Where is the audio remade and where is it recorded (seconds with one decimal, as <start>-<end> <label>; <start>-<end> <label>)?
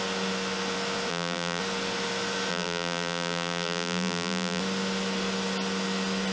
0.0-1.1 recorded; 1.1-1.6 remade; 1.6-2.5 recorded; 2.5-4.6 remade; 4.6-6.3 recorded